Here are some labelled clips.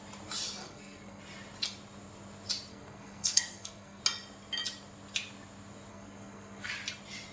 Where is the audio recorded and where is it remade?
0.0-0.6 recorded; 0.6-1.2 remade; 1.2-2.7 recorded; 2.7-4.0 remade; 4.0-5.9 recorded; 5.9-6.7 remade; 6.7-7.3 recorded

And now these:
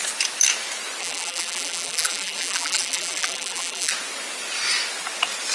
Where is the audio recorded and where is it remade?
0.0-1.0 recorded; 1.0-3.9 remade; 3.9-5.5 recorded

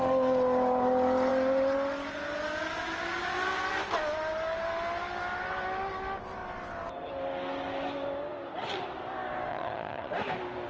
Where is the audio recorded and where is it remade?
0.0-9.5 recorded; 9.5-10.1 remade; 10.1-10.7 recorded